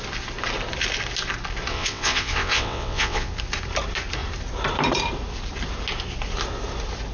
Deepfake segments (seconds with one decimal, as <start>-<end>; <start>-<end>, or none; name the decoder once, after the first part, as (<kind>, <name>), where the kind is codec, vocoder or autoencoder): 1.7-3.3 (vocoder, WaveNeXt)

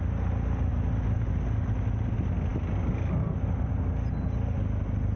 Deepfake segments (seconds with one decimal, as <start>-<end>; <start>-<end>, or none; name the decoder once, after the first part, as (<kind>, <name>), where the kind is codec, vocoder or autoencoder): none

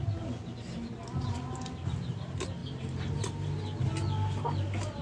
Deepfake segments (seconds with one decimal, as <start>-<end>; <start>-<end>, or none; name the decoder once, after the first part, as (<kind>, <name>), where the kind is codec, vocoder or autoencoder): none